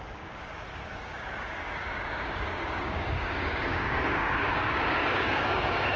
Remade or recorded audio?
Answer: remade